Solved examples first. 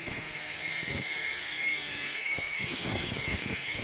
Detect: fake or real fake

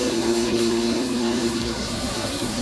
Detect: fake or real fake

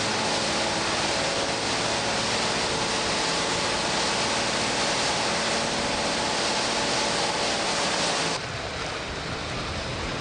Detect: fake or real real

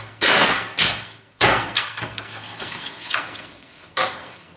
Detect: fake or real fake